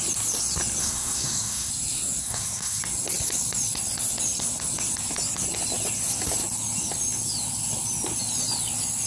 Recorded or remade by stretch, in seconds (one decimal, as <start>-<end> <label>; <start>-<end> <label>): 0.0-0.8 recorded; 0.8-1.7 remade; 1.7-2.2 recorded; 2.2-2.8 remade; 2.8-9.1 recorded